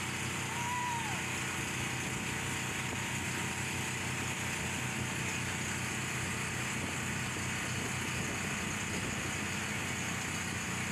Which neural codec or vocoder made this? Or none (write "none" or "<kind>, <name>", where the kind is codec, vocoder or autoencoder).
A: none